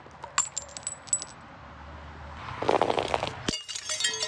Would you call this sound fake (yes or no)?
no